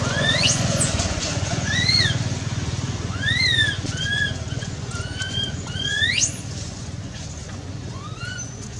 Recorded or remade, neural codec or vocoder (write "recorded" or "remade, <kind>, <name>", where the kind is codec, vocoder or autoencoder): remade, vocoder, Vocos